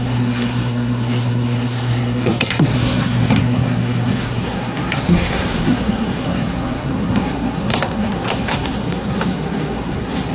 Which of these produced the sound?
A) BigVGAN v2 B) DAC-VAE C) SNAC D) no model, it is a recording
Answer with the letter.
C